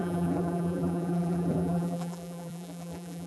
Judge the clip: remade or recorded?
remade